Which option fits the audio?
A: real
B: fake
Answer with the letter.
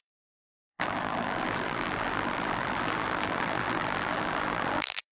B